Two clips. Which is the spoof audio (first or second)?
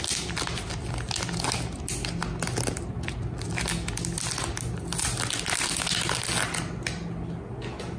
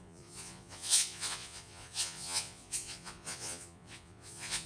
second